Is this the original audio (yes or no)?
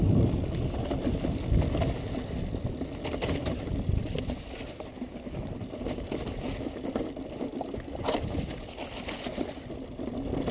yes